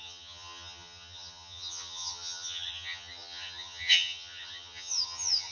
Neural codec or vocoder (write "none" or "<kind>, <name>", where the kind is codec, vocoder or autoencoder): vocoder, HiFi-GAN